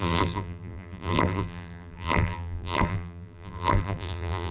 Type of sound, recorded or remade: remade